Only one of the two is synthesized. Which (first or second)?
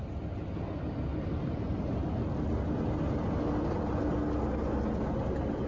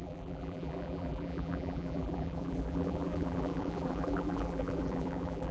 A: second